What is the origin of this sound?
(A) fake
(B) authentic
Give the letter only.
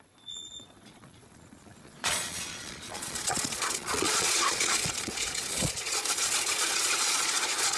A